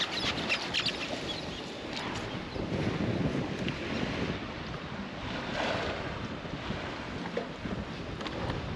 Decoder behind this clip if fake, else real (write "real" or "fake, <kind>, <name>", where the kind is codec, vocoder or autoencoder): real